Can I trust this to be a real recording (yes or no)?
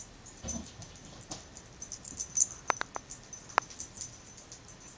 yes